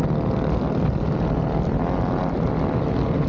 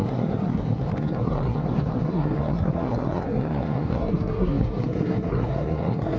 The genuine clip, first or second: first